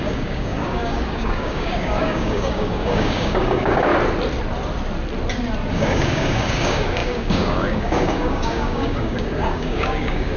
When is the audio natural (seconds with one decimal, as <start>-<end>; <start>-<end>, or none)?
3.9-5.7